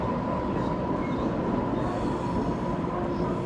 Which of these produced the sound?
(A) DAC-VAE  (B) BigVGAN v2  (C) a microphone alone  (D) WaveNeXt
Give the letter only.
C